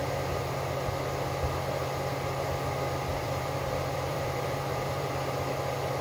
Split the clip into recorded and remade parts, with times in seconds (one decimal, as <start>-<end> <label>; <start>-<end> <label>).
0.0-3.1 recorded; 3.1-5.1 remade; 5.1-6.0 recorded